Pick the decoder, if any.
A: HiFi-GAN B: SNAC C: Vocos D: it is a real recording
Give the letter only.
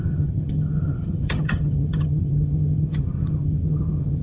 A